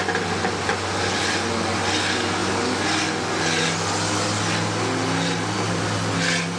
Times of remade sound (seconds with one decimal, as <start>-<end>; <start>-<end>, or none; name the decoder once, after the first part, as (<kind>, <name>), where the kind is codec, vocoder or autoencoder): none